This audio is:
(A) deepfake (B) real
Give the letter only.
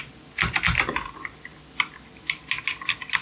B